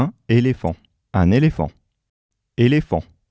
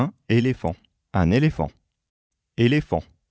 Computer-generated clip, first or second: second